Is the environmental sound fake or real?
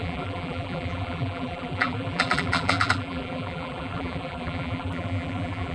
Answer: fake